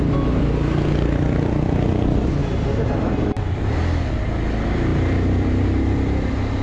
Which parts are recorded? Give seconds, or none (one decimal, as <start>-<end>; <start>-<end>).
0.0-2.4; 3.1-6.6